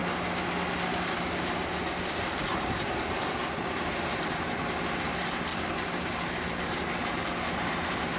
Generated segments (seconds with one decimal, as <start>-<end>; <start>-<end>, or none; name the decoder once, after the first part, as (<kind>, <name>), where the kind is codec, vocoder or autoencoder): 2.5-4.6 (vocoder, BigVGAN v2); 5.5-8.2